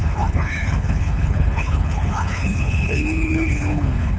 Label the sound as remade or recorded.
remade